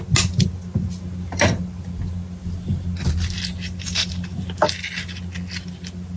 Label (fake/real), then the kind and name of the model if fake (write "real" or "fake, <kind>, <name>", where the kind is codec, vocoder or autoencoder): real